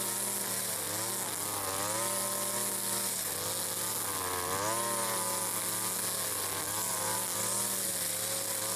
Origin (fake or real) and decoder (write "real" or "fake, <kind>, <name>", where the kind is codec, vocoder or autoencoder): real